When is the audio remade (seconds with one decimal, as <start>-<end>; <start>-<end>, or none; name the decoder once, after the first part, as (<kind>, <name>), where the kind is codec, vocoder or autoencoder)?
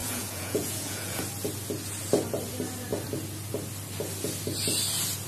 0.0-1.2 (vocoder, Vocos)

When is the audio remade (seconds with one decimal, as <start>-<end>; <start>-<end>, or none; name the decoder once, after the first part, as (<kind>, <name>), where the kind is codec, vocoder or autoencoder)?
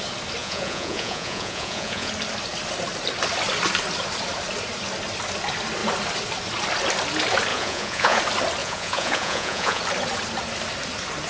0.4-2.1 (vocoder, Vocos); 7.5-8.2; 8.6-9.8